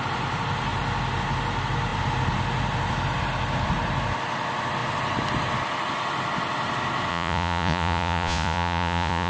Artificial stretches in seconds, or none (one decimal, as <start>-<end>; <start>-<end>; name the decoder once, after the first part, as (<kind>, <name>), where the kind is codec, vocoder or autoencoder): 7.1-9.3 (vocoder, Vocos)